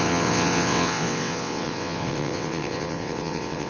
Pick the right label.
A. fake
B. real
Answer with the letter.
A